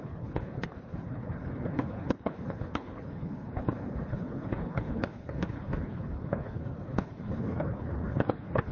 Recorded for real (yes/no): no